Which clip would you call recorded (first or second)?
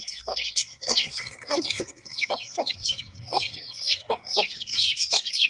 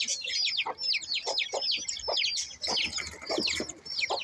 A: second